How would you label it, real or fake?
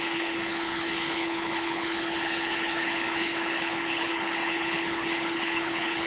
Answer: fake